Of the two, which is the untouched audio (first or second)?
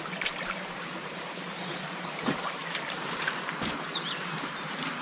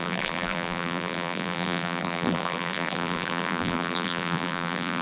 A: first